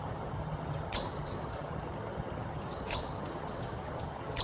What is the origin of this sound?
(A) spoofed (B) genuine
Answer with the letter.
A